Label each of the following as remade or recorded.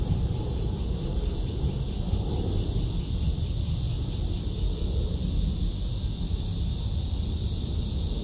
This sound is recorded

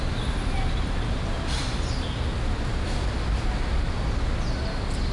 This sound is recorded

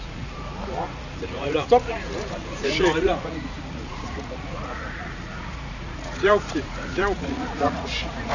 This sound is remade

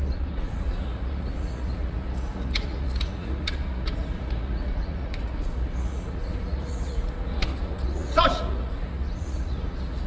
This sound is remade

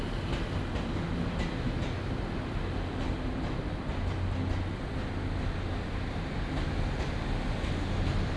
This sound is recorded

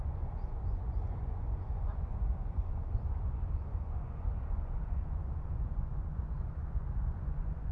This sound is remade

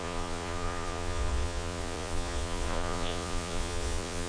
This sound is remade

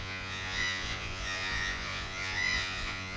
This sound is remade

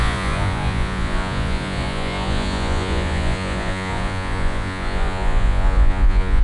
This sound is remade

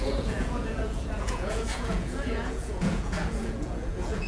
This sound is remade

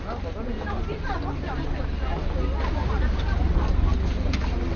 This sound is recorded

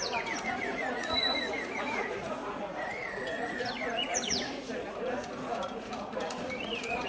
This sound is remade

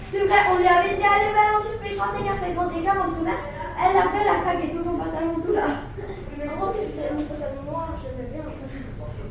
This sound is recorded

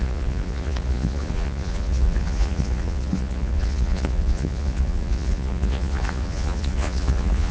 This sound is remade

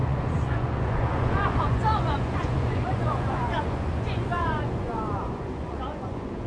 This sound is remade